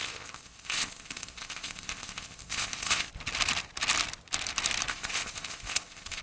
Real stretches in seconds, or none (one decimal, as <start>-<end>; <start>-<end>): 3.1-4.9